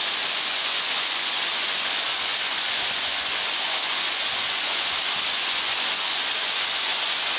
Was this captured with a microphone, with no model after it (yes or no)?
no